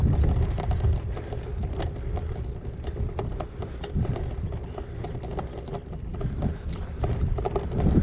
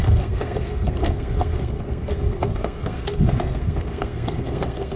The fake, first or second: second